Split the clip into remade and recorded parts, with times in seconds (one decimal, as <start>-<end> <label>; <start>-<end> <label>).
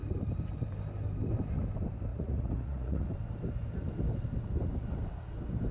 0.0-2.1 recorded; 2.1-3.1 remade; 3.1-5.7 recorded